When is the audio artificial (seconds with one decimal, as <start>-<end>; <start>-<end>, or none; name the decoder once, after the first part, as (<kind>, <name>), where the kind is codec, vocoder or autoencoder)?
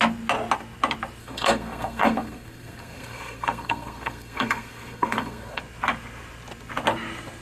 1.2-5.6 (codec, SNAC)